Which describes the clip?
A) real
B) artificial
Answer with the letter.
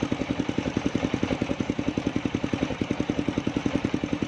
B